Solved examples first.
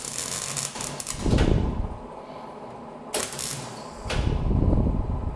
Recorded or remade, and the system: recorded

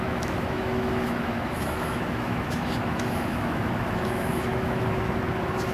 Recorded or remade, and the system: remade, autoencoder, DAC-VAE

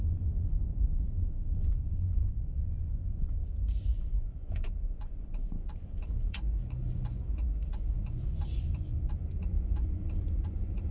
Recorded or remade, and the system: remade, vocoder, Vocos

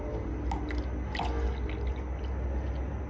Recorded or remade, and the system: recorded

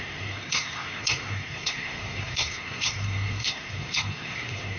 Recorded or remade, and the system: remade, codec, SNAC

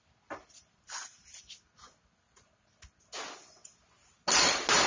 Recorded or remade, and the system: recorded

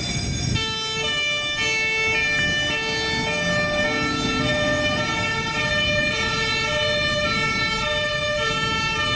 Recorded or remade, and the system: recorded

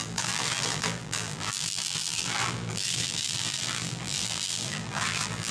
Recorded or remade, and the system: remade, vocoder, BigVGAN v2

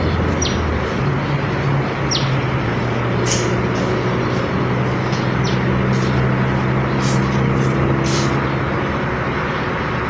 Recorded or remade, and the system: recorded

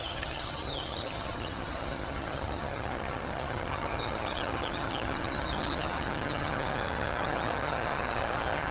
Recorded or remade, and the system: remade, vocoder, HiFi-GAN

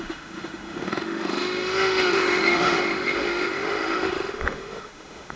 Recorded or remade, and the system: remade, autoencoder, DAC-VAE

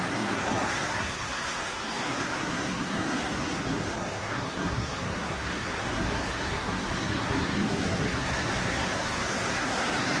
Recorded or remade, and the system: remade, codec, SNAC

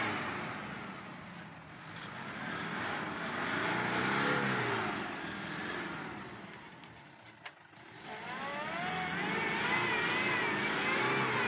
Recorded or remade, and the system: recorded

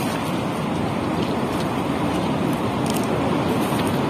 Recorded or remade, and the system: recorded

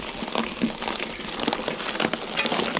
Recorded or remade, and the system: recorded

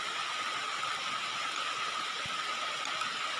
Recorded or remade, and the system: recorded